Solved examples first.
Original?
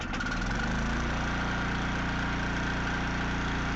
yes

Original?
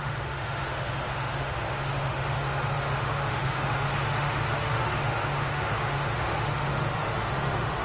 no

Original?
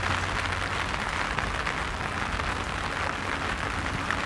yes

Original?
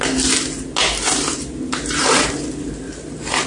yes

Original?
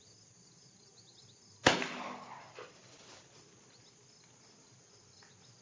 yes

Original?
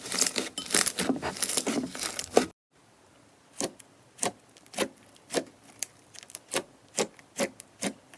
no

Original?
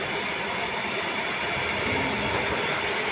yes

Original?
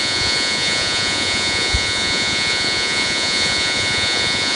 no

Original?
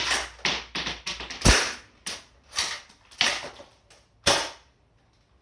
yes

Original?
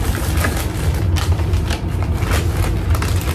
yes